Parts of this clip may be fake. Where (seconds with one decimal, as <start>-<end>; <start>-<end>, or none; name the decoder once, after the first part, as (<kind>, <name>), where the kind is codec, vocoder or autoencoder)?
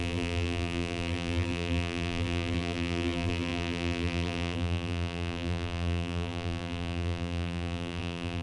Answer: 0.0-8.4 (vocoder, BigVGAN v2)